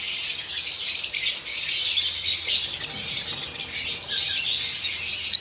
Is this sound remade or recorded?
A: recorded